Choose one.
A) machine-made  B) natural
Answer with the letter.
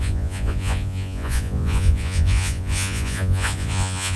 A